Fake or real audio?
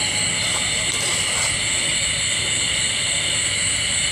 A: real